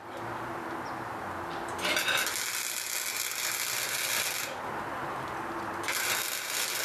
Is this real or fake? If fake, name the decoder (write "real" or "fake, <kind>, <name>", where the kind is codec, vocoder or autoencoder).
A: real